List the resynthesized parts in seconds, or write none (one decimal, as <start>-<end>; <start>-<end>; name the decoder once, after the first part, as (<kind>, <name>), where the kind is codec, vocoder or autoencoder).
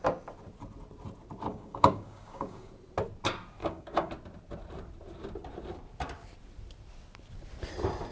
1.5-2.7 (codec, DAC); 3.6-4.1